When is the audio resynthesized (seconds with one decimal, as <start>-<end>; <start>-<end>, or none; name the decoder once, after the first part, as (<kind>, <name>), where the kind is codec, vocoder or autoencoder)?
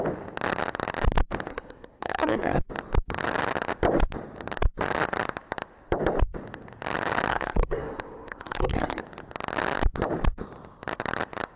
1.5-2.6 (codec, SNAC); 7.3-9.0